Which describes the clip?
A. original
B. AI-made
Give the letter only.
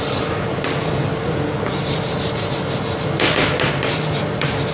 A